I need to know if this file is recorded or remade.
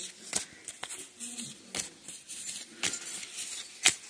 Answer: recorded